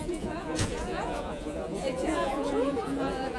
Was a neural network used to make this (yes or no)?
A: yes